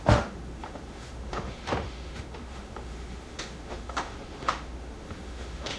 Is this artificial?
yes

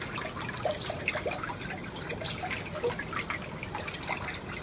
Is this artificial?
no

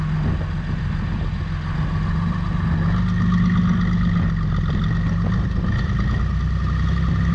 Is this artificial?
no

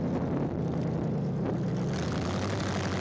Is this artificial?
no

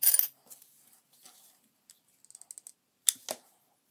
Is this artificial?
no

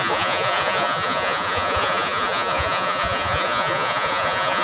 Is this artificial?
yes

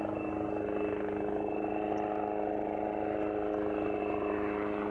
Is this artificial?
no